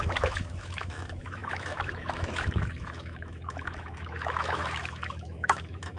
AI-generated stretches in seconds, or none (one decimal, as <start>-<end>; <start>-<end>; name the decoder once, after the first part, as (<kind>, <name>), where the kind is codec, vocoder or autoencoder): 0.0-6.0 (autoencoder, DAC-VAE)